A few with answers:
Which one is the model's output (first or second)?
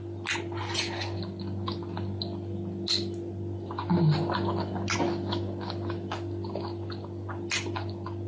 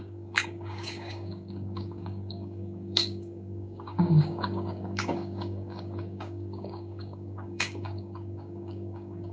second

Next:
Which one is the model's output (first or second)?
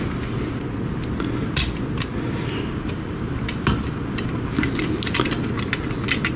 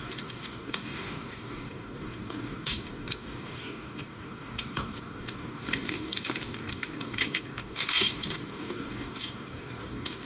second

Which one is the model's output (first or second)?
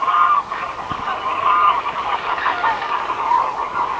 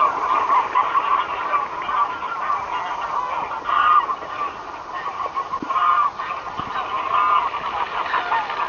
first